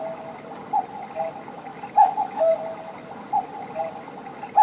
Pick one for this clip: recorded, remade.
remade